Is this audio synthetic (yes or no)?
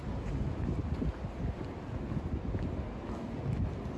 no